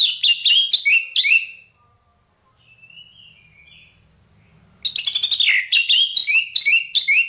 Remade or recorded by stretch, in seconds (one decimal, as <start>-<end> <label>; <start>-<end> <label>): 0.0-0.4 remade; 0.4-1.2 recorded; 1.2-2.1 remade; 2.1-5.6 recorded; 5.6-6.2 remade; 6.2-7.3 recorded